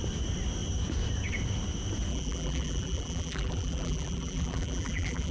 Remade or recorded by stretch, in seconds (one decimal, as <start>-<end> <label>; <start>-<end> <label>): 0.0-2.1 recorded; 2.1-5.3 remade